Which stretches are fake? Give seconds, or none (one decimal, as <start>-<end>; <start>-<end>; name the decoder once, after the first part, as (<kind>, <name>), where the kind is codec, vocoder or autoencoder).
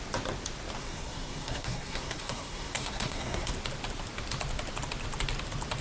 0.8-3.5 (codec, SNAC)